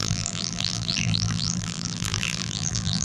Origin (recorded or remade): remade